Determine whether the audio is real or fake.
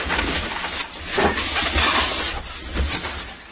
real